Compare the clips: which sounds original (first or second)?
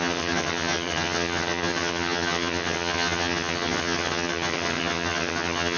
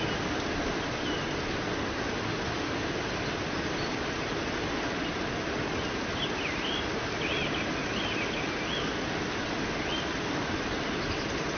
second